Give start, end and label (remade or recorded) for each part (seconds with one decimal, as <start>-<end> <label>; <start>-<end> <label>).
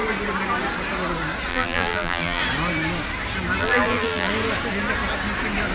0.0-1.5 recorded; 1.5-2.4 remade; 2.4-3.6 recorded; 3.6-4.3 remade; 4.3-5.7 recorded